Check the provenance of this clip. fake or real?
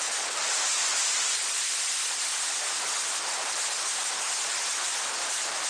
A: real